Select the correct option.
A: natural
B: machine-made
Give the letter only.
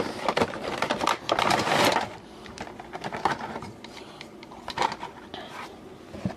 B